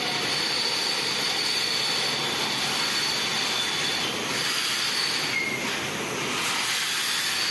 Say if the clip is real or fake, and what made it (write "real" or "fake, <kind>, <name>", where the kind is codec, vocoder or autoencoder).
real